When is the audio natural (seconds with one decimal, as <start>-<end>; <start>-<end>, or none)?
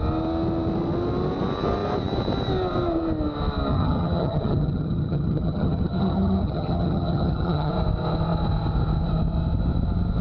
0.0-3.7; 7.7-10.2